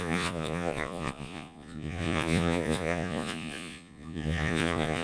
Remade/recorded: remade